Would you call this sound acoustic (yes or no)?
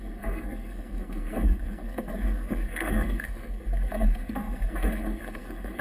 no